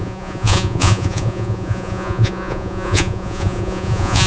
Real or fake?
fake